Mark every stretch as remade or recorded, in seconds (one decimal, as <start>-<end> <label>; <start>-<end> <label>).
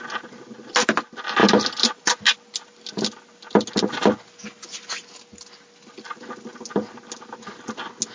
0.0-8.1 recorded